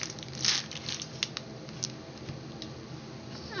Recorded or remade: recorded